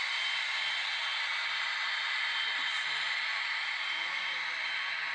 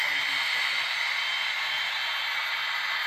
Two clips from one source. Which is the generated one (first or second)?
first